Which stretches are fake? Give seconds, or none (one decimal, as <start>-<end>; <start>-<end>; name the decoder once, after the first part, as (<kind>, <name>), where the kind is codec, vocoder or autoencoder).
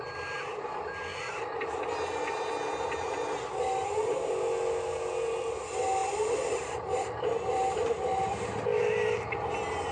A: 1.1-2.5 (vocoder, BigVGAN v2); 6.0-8.8